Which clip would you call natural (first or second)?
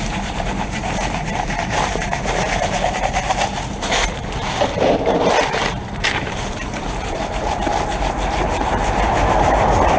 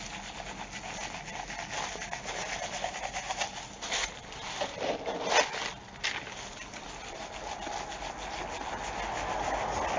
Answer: second